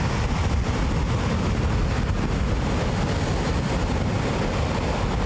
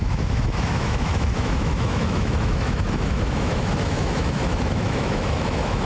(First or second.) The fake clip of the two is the second